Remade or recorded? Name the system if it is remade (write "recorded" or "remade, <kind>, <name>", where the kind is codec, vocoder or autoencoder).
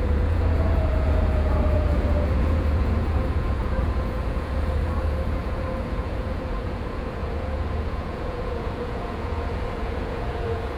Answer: remade, vocoder, Vocos